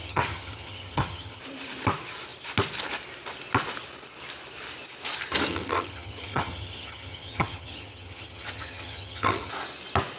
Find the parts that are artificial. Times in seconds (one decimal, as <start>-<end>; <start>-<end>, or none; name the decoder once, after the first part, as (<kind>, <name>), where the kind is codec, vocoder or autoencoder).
0.0-1.4 (vocoder, HiFi-GAN); 5.5-9.5